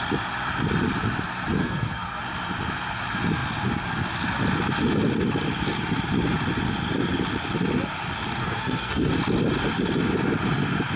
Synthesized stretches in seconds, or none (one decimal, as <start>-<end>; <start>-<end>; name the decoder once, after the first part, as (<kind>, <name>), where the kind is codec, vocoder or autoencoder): 1.6-2.2 (codec, SNAC); 8.4-9.1